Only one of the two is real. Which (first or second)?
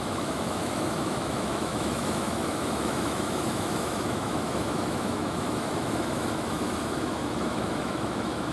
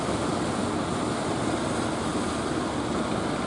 second